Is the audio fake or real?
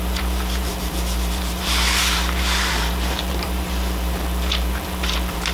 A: fake